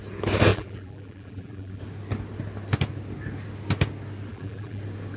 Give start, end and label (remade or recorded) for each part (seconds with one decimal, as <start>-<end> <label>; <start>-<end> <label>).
0.0-0.5 recorded; 0.5-1.8 remade; 1.8-4.3 recorded; 4.3-4.8 remade; 4.8-5.2 recorded